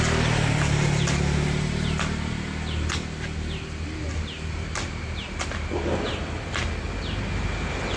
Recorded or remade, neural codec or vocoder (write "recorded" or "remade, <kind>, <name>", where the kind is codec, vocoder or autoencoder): recorded